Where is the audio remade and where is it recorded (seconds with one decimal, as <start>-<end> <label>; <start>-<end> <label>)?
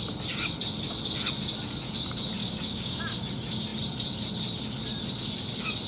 0.0-2.4 recorded; 2.4-3.0 remade; 3.0-5.9 recorded